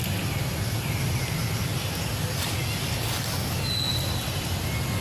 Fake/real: real